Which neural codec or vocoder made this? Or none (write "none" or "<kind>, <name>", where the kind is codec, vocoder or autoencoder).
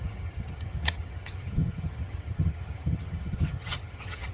vocoder, HiFi-GAN